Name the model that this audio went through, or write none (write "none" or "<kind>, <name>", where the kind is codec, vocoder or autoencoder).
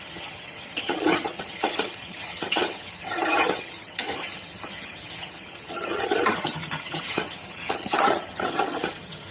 vocoder, HiFi-GAN